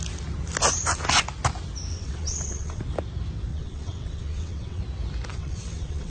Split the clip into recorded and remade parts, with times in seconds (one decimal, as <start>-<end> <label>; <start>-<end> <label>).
0.0-1.9 recorded; 1.9-2.8 remade; 2.8-3.5 recorded; 3.5-4.8 remade; 4.8-5.3 recorded; 5.3-6.1 remade